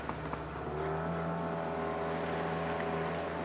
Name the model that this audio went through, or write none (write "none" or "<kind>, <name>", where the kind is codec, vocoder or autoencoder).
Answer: none